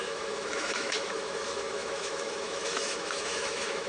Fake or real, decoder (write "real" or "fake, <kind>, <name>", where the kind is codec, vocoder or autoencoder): fake, autoencoder, DAC-VAE